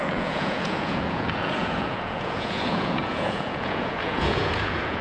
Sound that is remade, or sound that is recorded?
remade